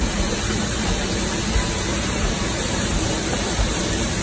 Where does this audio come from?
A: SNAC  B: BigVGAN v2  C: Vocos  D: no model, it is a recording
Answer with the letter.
B